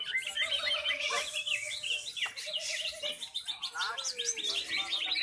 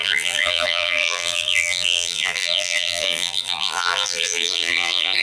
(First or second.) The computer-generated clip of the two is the second